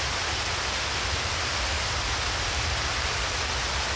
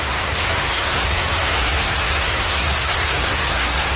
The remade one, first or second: second